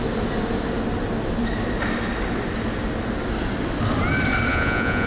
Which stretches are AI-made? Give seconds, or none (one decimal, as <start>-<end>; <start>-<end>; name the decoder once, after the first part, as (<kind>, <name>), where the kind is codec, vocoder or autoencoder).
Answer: 4.5-5.1 (vocoder, Vocos)